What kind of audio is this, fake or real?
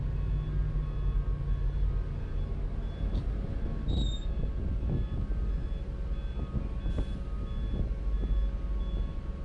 real